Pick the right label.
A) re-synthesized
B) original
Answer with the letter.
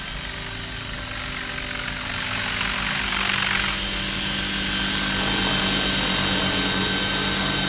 B